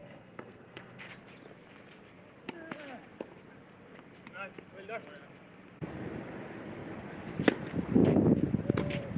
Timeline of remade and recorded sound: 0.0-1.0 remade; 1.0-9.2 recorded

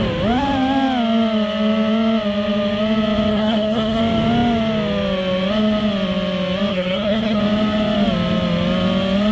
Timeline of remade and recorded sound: 0.0-3.3 recorded; 3.3-4.0 remade; 4.0-6.7 recorded; 6.7-7.4 remade; 7.4-9.3 recorded

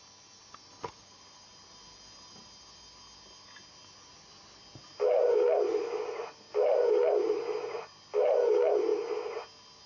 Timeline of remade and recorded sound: 0.0-9.9 recorded

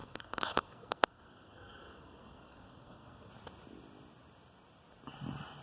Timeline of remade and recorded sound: 0.0-3.3 remade; 3.3-5.6 recorded

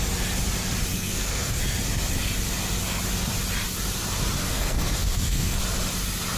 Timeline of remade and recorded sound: 0.0-0.9 recorded; 0.9-1.6 remade; 1.6-4.4 recorded; 4.4-5.6 remade; 5.6-6.4 recorded

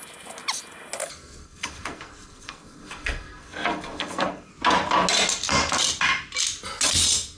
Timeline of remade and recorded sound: 0.0-1.0 recorded; 1.0-4.5 remade; 4.5-7.4 recorded

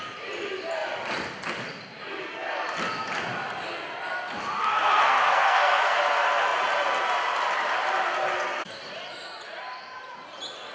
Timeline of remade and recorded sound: 0.0-4.6 recorded; 4.6-6.0 remade; 6.0-10.7 recorded